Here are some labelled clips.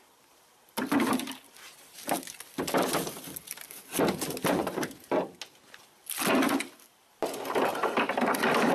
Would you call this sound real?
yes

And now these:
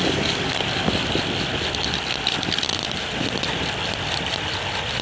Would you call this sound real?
yes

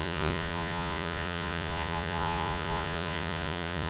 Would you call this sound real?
no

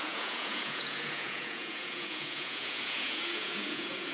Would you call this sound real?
no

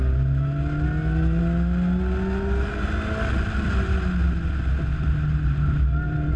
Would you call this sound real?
yes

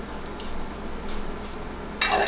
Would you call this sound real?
yes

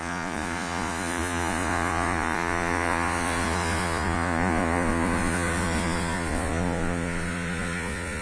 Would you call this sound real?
no